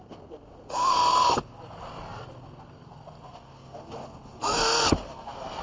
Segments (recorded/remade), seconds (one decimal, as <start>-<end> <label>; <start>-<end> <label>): 0.0-5.6 recorded